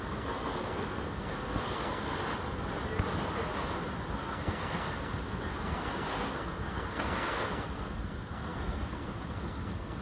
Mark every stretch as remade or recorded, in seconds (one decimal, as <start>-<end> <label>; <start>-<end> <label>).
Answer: 0.0-2.2 remade; 2.2-4.1 recorded; 4.1-10.0 remade